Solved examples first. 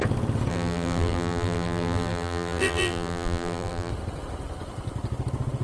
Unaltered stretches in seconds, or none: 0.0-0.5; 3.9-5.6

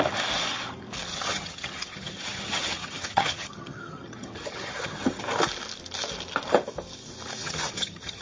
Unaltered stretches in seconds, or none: 0.0-1.1; 5.2-7.4

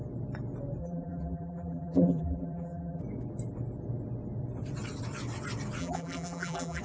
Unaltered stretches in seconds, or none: 0.0-0.8; 3.0-5.8

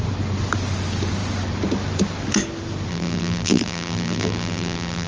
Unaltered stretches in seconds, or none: 0.0-2.9

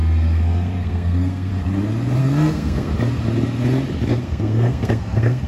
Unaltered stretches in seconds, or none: 1.5-2.2; 2.9-4.1

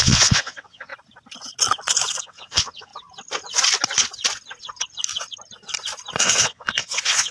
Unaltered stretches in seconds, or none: 0.9-2.2; 2.9-6.2

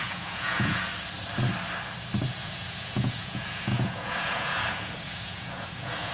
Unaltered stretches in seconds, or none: 0.9-2.3